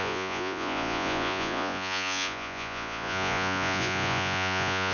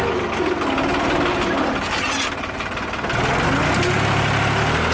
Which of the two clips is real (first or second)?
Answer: second